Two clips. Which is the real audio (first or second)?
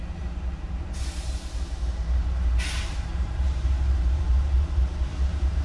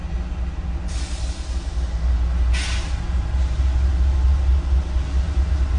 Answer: second